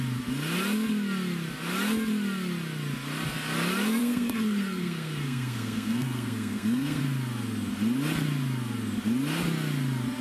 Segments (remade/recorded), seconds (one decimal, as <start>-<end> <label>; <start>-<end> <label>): 0.0-4.0 recorded; 4.0-7.0 remade; 7.0-10.2 recorded